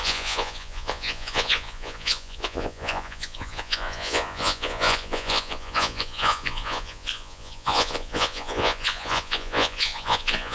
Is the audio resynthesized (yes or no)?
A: yes